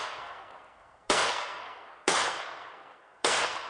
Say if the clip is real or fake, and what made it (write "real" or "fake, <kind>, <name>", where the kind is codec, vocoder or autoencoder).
fake, codec, SNAC